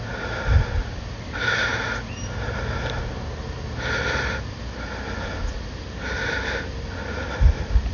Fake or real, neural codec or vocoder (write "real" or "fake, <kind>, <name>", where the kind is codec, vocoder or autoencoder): real